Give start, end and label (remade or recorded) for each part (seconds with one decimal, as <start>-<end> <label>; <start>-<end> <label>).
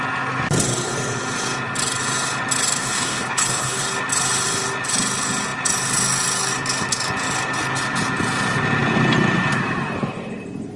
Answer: 0.0-2.8 recorded; 2.8-3.8 remade; 3.8-10.8 recorded